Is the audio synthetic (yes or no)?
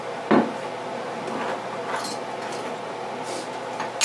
no